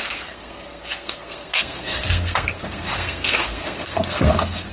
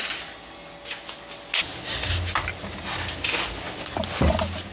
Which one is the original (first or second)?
second